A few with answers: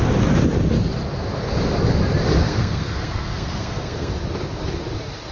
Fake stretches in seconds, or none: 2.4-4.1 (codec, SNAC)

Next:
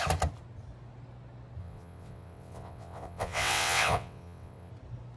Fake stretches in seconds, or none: 1.6-4.7 (vocoder, WaveNeXt)

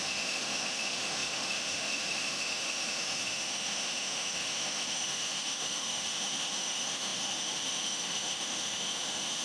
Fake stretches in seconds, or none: 0.0-9.4 (autoencoder, DAC-VAE)

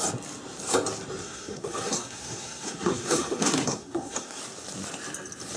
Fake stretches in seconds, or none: 1.2-4.4 (codec, SNAC)